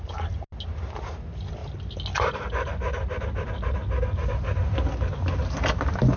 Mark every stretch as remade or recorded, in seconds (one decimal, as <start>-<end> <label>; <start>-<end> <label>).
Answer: 0.0-6.2 recorded